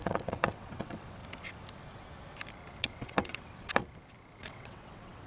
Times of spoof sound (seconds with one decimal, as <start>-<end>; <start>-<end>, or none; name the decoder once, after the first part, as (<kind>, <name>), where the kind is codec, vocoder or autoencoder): 0.0-1.2 (vocoder, WaveNeXt); 2.8-3.8; 4.4-5.3